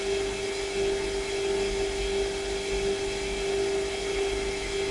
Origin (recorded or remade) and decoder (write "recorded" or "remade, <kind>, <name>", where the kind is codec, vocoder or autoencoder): recorded